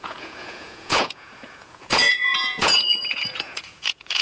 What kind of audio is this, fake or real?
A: fake